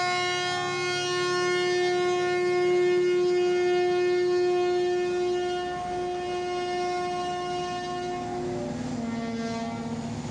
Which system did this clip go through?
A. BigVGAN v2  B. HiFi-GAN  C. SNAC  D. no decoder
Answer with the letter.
D